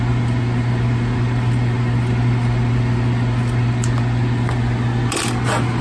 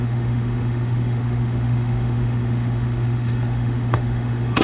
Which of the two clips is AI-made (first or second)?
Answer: second